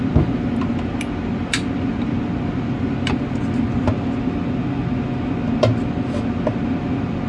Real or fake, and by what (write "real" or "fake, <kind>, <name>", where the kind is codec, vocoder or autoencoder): real